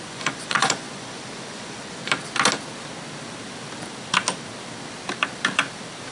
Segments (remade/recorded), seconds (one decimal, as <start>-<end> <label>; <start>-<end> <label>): 0.0-2.0 remade; 2.0-6.1 recorded